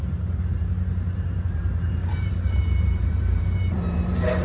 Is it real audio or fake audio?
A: fake